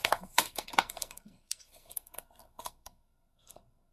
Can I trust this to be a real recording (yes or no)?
no